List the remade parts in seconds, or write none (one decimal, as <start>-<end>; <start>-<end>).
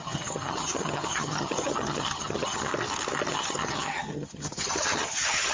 0.0-2.7; 3.3-5.5